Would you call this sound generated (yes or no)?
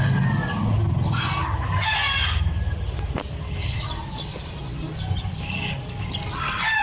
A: no